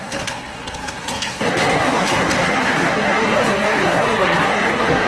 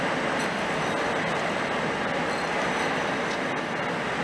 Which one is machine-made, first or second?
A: first